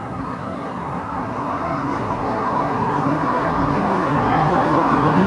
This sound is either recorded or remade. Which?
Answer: remade